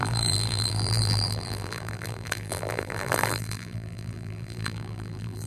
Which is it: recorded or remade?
remade